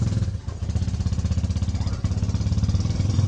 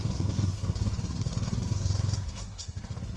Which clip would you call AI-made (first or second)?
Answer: second